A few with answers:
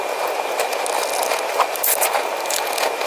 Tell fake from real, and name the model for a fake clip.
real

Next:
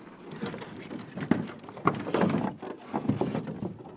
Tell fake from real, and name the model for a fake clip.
real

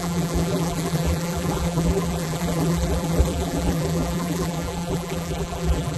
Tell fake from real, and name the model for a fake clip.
fake, vocoder, BigVGAN v2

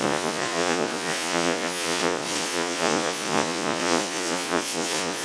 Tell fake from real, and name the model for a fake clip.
fake, vocoder, Vocos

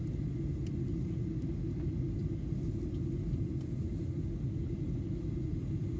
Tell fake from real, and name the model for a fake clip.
real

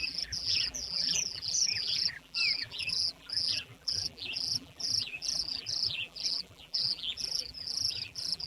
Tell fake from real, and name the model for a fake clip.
fake, vocoder, BigVGAN v2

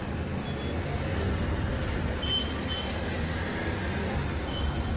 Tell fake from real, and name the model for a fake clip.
real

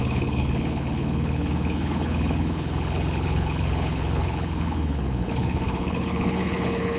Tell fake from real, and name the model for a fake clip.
fake, codec, HILCodec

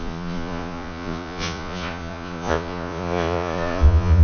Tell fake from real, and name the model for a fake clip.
fake, vocoder, Vocos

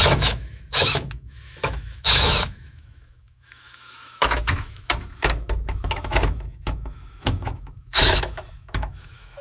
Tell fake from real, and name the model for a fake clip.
fake, autoencoder, DAC-VAE